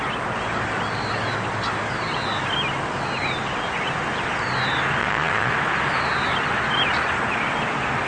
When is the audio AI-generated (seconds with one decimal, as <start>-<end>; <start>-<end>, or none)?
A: 5.0-5.5